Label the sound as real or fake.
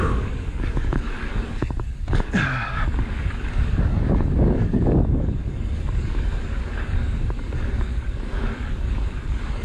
fake